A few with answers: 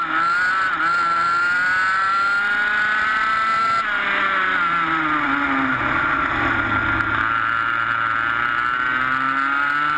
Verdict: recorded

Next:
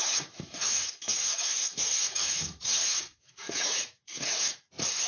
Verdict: remade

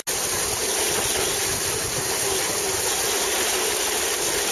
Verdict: recorded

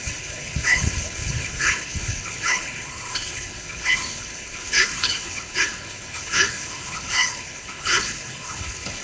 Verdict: remade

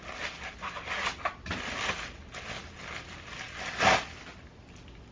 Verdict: recorded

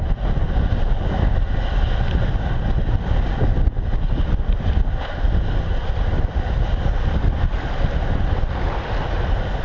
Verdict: recorded